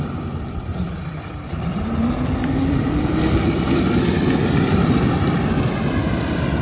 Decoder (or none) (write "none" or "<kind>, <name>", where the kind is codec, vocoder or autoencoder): vocoder, BigVGAN v2